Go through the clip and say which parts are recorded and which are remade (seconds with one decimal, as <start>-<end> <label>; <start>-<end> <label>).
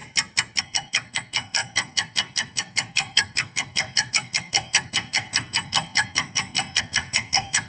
0.0-0.6 recorded; 0.6-7.7 remade